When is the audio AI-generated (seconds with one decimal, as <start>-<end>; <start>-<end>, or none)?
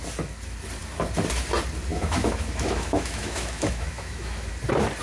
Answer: 1.9-4.5